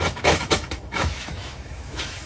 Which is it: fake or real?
fake